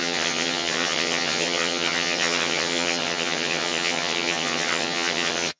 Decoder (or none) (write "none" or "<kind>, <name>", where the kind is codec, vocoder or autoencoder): vocoder, HiFi-GAN